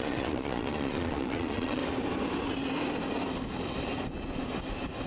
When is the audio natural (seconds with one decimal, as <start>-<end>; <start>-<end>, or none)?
1.8-5.1